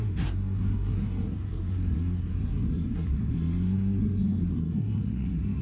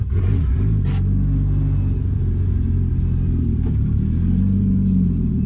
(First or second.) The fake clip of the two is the first